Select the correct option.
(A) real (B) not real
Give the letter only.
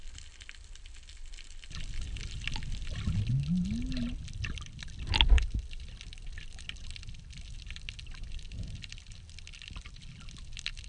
A